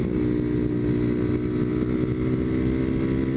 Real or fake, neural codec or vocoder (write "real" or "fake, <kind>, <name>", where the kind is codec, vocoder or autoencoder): real